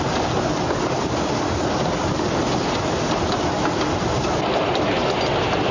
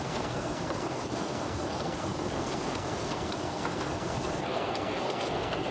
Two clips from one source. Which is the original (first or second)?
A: first